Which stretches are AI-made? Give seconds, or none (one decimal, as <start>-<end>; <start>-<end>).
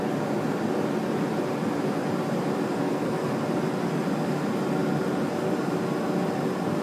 2.8-3.3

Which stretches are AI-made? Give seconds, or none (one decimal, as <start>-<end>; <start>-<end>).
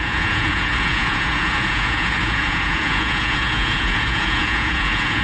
0.0-5.2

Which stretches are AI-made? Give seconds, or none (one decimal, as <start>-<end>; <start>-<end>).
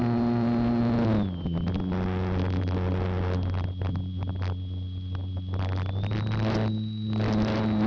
none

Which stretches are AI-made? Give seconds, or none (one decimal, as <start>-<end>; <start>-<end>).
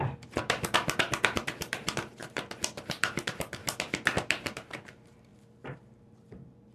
0.0-3.6; 4.3-6.7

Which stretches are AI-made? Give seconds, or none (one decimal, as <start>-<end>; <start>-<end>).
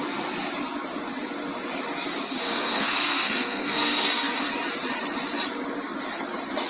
2.4-4.5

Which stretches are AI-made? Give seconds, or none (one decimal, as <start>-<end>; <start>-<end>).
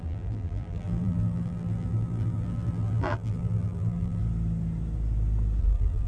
0.0-4.2; 5.6-6.1